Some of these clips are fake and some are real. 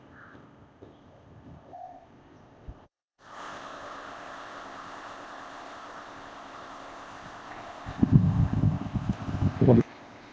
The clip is fake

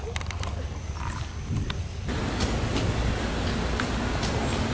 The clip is real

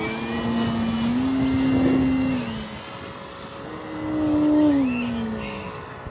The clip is real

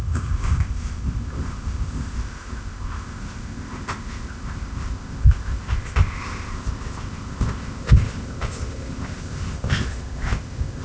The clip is fake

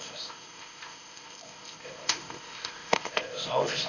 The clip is fake